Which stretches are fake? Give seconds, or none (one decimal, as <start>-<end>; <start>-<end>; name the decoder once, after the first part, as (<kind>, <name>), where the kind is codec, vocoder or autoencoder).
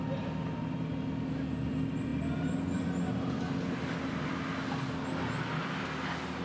none